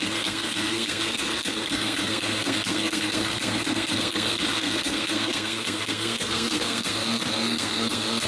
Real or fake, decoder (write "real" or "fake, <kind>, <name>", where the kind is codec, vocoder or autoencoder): fake, codec, SNAC